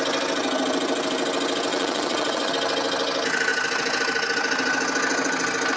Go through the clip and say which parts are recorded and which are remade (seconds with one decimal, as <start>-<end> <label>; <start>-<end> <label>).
0.0-1.7 recorded; 1.7-2.5 remade; 2.5-5.8 recorded